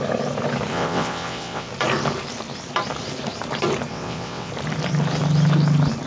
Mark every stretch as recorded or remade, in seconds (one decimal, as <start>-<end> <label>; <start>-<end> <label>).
0.0-0.7 recorded; 0.7-1.7 remade; 1.7-3.9 recorded; 3.9-4.5 remade; 4.5-6.1 recorded